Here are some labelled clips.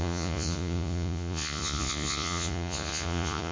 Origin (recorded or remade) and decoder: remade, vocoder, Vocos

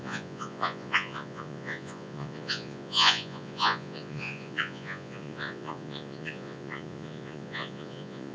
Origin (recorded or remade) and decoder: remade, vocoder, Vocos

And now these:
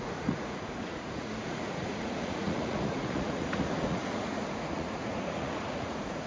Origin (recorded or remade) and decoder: remade, vocoder, Vocos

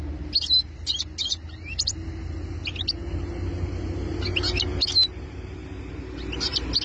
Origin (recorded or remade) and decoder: recorded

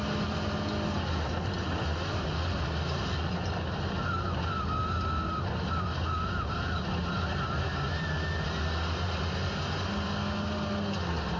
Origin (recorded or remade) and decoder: recorded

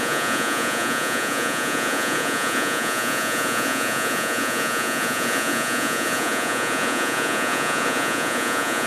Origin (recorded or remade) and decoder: remade, vocoder, Vocos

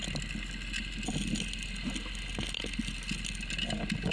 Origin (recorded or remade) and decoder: recorded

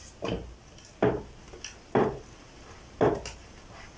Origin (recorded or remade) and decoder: recorded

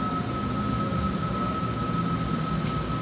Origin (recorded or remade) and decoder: recorded